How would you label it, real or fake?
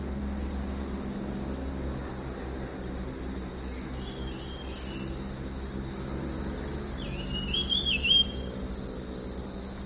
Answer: real